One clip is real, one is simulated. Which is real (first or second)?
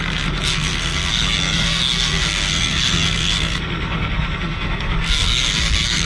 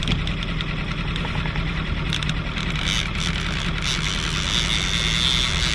second